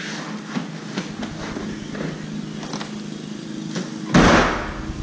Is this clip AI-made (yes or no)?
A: no